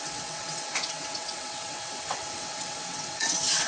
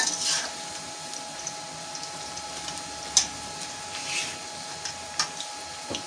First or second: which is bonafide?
second